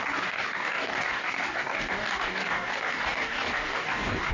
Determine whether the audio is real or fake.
fake